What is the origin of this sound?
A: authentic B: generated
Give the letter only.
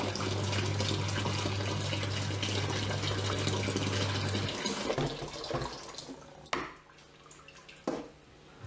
A